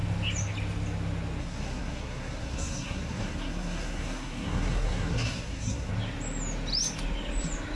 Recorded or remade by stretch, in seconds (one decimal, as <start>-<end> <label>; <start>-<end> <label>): 0.0-1.4 recorded; 1.4-5.9 remade; 5.9-7.7 recorded

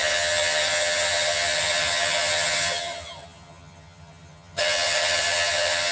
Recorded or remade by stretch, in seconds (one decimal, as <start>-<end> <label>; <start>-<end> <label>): 0.0-5.9 remade

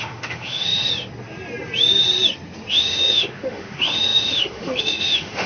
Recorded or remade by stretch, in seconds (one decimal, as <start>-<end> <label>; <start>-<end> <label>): 0.0-0.9 remade; 0.9-2.7 recorded; 2.7-5.5 remade